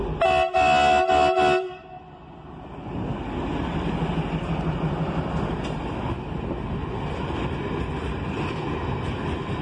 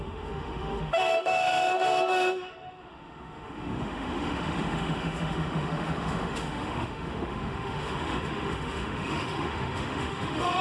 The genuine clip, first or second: first